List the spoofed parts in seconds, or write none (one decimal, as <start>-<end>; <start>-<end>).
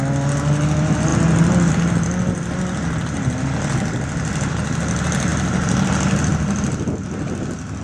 none